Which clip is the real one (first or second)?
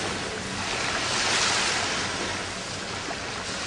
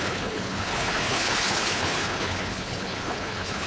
first